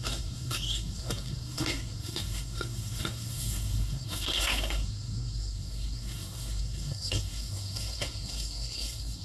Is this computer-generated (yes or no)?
yes